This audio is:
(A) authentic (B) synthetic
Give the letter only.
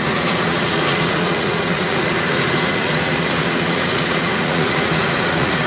B